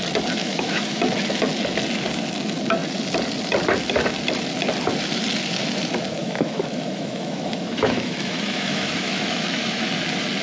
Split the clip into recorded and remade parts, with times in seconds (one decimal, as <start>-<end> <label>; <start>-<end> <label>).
0.0-0.4 recorded; 0.4-1.0 remade; 1.0-6.2 recorded; 6.2-9.9 remade; 9.9-10.4 recorded